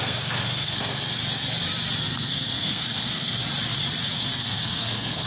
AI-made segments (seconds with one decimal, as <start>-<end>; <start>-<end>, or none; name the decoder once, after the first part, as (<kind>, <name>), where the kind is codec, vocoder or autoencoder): 0.0-1.2 (codec, SNAC); 2.0-3.4; 4.4-5.3